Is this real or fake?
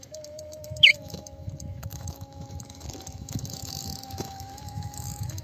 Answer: fake